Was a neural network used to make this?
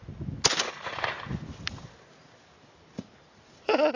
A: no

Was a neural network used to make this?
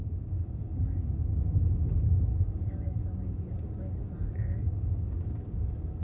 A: yes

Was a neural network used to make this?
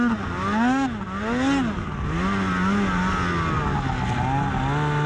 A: no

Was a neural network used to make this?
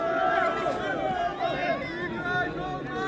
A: no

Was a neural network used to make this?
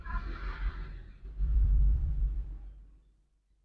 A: yes